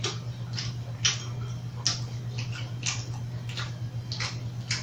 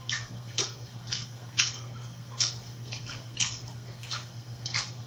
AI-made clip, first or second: second